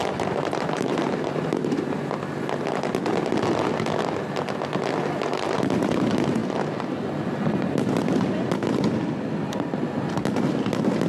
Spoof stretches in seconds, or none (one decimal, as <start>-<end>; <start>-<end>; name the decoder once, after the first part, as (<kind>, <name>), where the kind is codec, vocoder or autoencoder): 0.0-1.4 (vocoder, BigVGAN v2)

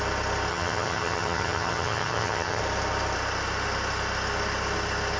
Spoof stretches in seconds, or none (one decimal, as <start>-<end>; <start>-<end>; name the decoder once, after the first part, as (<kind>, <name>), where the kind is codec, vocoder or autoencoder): 0.5-2.6 (vocoder, HiFi-GAN)